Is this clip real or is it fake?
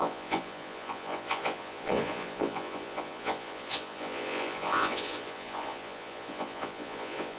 fake